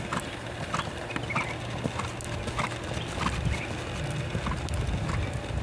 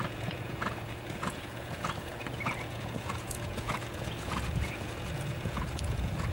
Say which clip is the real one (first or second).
first